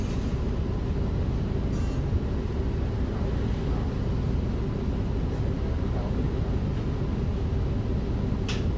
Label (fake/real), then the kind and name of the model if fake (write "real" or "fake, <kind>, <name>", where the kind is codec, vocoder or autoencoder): real